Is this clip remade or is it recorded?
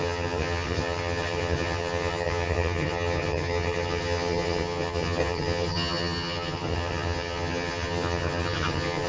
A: remade